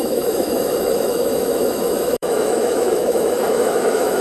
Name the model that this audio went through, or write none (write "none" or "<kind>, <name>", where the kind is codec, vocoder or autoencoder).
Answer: autoencoder, DAC-VAE